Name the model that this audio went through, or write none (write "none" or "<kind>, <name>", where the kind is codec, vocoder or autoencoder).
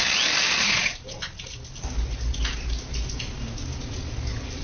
none